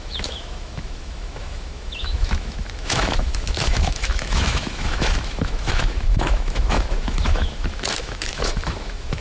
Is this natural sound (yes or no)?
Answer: no